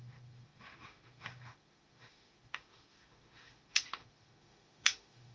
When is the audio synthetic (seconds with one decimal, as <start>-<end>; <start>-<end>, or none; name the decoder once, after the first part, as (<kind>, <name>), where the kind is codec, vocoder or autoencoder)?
0.0-5.3 (autoencoder, DAC-VAE)